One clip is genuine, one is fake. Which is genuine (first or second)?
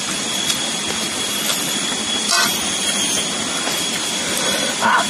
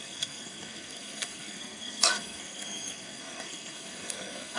first